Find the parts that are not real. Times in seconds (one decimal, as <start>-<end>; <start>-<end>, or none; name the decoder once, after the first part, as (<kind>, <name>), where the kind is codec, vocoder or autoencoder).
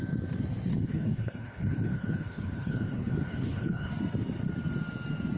0.7-3.9 (codec, HILCodec)